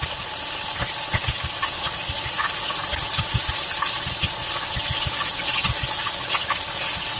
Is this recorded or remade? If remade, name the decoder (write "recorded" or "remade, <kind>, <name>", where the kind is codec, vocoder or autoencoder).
recorded